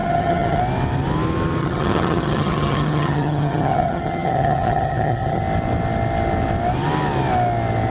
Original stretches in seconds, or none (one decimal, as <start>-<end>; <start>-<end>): 0.6-1.6; 5.4-7.9